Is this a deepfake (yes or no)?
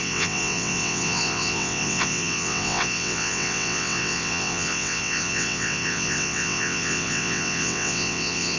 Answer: yes